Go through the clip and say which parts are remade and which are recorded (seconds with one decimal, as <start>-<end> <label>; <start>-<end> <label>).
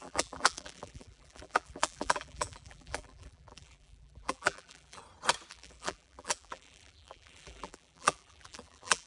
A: 0.0-5.0 remade; 5.0-5.5 recorded; 5.5-9.1 remade